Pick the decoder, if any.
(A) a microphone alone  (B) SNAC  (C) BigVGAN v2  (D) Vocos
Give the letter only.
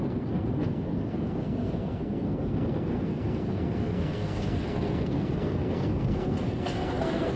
B